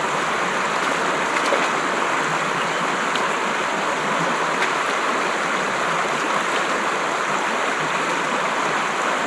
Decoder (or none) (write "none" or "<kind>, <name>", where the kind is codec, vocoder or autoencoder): none